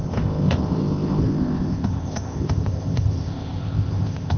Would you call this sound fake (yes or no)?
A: yes